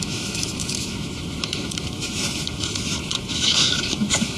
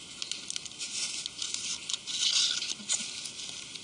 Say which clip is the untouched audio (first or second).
second